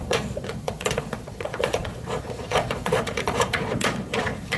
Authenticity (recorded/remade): remade